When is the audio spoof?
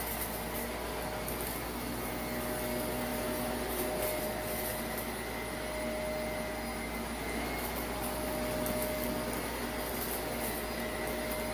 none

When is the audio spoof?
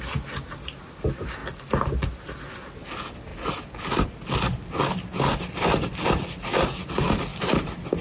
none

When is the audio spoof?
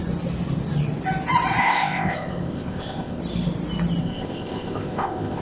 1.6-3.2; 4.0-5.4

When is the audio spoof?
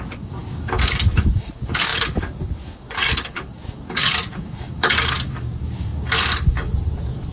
0.0-7.3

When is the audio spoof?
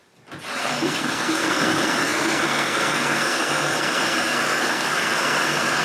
0.6-5.8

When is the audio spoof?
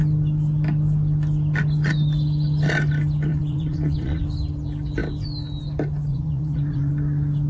3.3-4.2; 6.1-6.9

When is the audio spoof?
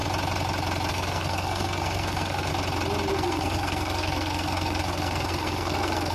0.9-2.5; 3.1-6.1